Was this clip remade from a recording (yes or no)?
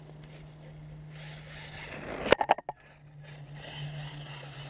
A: no